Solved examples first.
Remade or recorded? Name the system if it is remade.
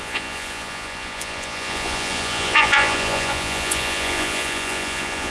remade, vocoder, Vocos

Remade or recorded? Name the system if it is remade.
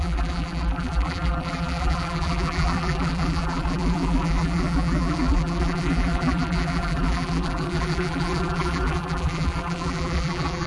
remade, vocoder, BigVGAN v2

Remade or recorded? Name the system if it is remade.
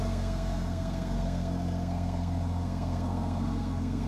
remade, codec, SNAC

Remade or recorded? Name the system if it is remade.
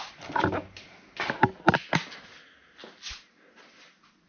recorded